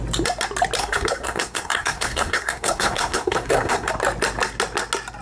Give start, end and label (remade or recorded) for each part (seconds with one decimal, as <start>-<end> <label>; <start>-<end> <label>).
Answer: 0.0-0.8 recorded; 0.8-3.9 remade; 3.9-5.2 recorded